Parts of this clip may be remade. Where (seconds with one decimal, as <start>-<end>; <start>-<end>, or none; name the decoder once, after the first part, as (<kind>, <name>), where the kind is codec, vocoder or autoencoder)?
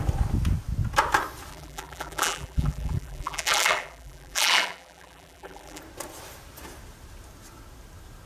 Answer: 1.5-5.8 (vocoder, BigVGAN v2)